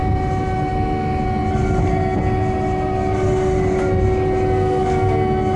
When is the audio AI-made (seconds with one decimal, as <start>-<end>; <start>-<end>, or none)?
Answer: none